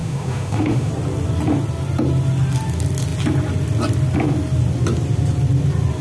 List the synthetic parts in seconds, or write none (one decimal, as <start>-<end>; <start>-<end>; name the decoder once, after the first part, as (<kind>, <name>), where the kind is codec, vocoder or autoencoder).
0.0-0.9 (autoencoder, DAC-VAE)